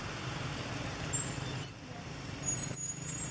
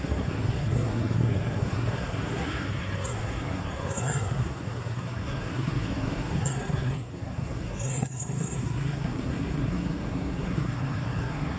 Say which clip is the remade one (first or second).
second